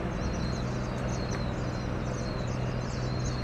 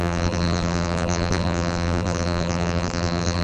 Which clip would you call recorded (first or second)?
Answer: first